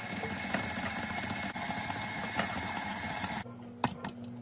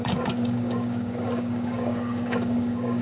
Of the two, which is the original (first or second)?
first